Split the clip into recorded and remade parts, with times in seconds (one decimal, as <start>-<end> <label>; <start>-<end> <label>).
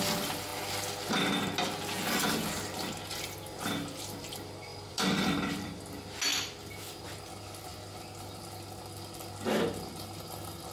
0.0-4.7 recorded; 4.7-5.8 remade; 5.8-10.7 recorded